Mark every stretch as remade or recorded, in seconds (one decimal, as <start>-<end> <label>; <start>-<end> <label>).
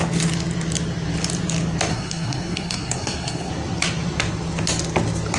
0.0-1.9 recorded; 1.9-3.5 remade; 3.5-5.4 recorded